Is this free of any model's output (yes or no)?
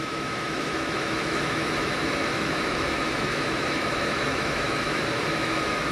no